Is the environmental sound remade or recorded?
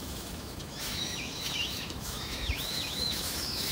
remade